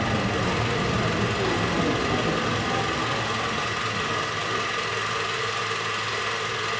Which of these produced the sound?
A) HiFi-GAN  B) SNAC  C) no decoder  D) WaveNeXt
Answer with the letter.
C